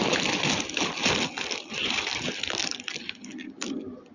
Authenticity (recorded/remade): recorded